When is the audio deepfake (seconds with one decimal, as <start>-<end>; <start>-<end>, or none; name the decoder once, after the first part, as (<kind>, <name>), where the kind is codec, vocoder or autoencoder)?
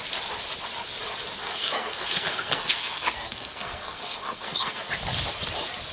1.4-4.9 (codec, SNAC)